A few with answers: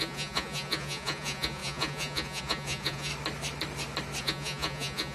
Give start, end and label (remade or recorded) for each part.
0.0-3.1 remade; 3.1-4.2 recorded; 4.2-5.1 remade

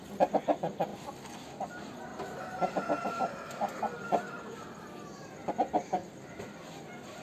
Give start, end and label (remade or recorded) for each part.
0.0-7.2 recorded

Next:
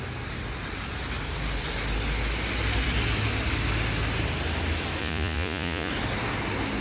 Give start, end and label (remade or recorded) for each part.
0.0-5.0 recorded; 5.0-5.9 remade; 5.9-6.8 recorded

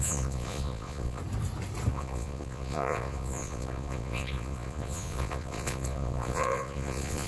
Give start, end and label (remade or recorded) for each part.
0.0-1.2 remade; 1.2-1.9 recorded; 1.9-7.3 remade

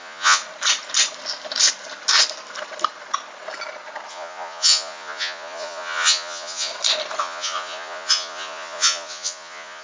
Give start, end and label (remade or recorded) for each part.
0.0-0.4 remade; 0.4-4.1 recorded; 4.1-6.7 remade; 6.7-7.2 recorded; 7.2-9.8 remade

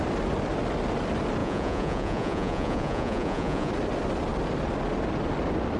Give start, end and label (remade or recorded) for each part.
0.0-1.4 recorded; 1.4-3.7 remade; 3.7-5.8 recorded

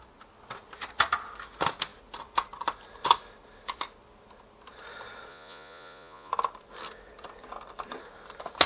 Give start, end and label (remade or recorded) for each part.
0.0-5.3 recorded; 5.3-6.3 remade; 6.3-8.7 recorded